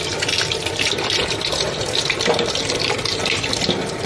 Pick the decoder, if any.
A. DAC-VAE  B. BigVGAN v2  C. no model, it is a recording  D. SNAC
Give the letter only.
B